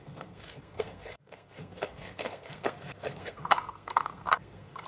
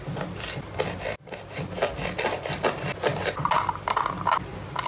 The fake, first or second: first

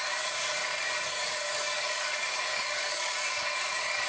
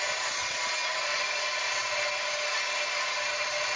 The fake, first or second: first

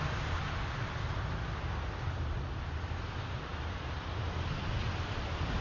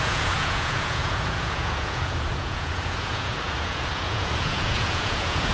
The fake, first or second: second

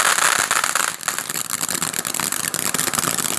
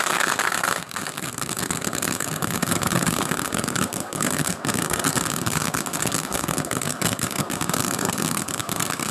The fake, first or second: second